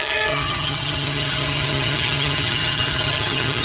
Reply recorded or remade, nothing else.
remade